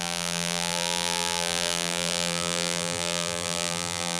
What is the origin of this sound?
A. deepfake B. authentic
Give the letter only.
A